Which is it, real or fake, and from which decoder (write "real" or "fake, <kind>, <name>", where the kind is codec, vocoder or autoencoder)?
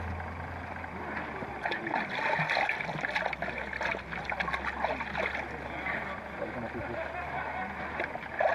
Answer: real